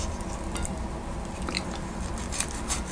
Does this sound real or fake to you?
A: real